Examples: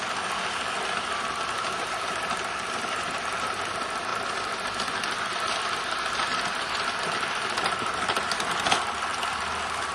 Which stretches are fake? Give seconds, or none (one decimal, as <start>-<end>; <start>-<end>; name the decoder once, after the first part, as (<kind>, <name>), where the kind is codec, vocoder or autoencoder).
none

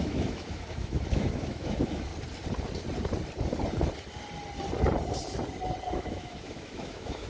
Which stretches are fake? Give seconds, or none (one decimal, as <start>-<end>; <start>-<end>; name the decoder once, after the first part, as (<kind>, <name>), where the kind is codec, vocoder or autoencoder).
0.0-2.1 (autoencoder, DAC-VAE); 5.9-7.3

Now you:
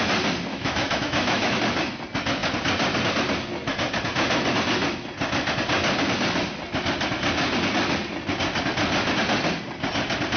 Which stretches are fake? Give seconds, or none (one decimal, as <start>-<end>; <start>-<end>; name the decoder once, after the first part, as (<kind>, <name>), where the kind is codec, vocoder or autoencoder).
0.5-1.6 (autoencoder, DAC-VAE)

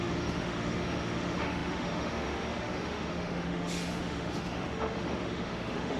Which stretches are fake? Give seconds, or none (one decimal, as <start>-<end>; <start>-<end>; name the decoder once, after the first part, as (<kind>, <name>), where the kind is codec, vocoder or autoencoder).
0.0-6.0 (autoencoder, DAC-VAE)